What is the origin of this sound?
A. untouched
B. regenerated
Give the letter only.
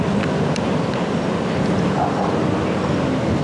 A